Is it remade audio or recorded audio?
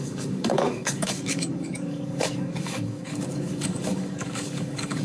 remade